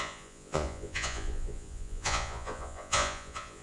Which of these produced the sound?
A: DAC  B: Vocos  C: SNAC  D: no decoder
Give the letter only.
B